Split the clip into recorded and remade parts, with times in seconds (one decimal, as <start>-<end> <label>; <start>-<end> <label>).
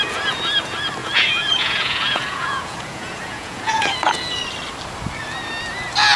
0.0-1.0 recorded; 1.0-4.2 remade; 4.2-6.2 recorded